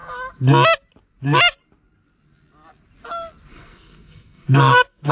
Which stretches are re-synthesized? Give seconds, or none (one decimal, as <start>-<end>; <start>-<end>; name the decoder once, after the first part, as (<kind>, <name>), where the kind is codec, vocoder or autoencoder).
3.5-5.1 (codec, SNAC)